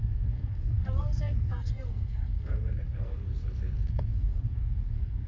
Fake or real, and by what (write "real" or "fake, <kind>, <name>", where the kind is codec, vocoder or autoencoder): fake, codec, SNAC